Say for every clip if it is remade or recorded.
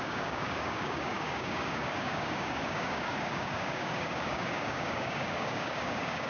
remade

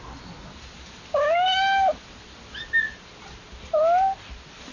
recorded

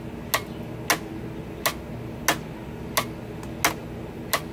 recorded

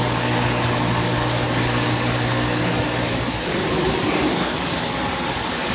remade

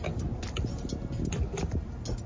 recorded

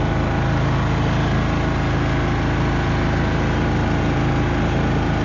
recorded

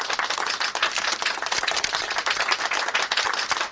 recorded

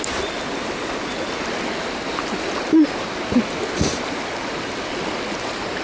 recorded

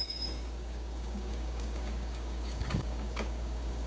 remade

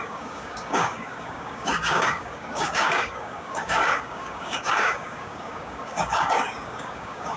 remade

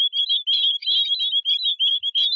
recorded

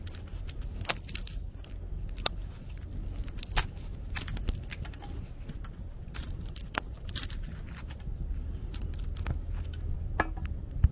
recorded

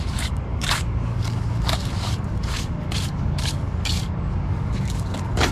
remade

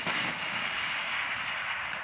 remade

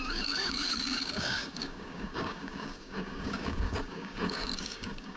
remade